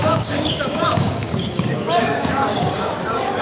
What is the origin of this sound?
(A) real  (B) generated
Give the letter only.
B